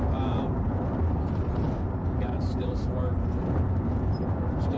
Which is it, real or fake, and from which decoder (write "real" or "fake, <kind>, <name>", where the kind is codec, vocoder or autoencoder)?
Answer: fake, vocoder, BigVGAN v2